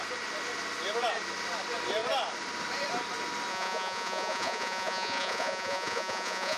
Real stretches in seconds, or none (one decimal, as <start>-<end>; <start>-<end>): 0.0-3.5